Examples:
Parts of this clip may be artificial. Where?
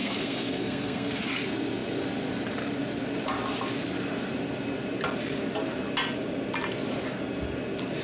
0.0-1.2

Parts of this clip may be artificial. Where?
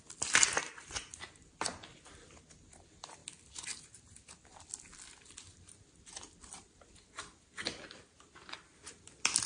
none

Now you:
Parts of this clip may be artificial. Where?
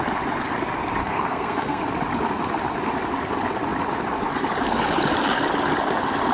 1.0-1.8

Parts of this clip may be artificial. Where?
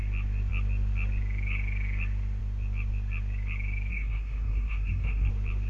3.9-5.3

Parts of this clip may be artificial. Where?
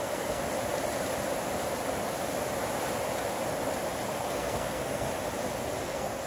0.0-0.4; 4.2-5.1; 5.8-6.3